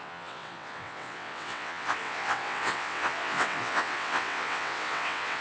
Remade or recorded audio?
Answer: remade